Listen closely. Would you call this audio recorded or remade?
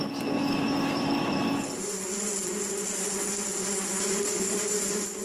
recorded